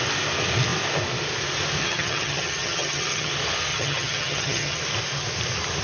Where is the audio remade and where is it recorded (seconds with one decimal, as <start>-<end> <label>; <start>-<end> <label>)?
0.0-1.8 recorded; 1.8-3.3 remade; 3.3-3.7 recorded; 3.7-4.8 remade; 4.8-5.8 recorded